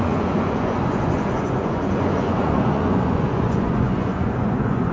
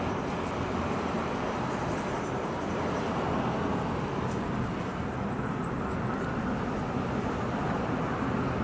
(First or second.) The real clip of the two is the second